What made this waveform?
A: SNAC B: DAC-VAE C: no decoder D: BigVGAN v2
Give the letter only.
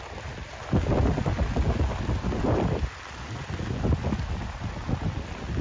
C